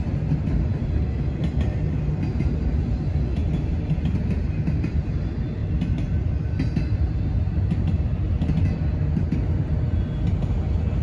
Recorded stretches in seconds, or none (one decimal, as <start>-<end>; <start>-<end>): 0.0-11.0